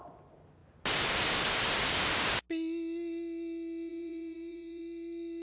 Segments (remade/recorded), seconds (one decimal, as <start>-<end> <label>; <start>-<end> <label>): 0.0-3.9 recorded; 3.9-4.8 remade; 4.8-5.4 recorded